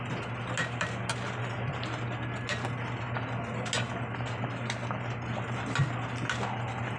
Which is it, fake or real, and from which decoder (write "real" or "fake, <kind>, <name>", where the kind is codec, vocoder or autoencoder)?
real